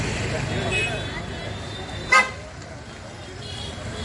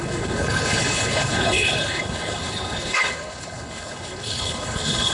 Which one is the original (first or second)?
first